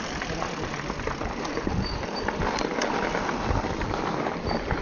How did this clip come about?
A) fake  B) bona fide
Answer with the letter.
B